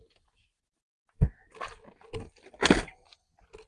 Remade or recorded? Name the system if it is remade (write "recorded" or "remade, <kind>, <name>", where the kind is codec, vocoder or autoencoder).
recorded